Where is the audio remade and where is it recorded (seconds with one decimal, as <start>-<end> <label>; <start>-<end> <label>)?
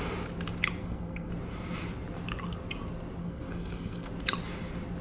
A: 0.0-0.8 recorded; 0.8-1.3 remade; 1.3-3.2 recorded; 3.2-4.1 remade; 4.1-5.0 recorded